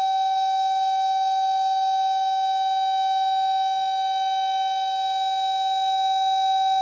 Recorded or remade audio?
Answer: recorded